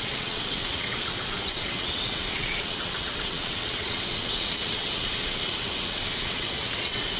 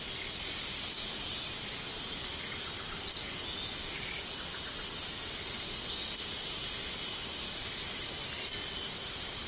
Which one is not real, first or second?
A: first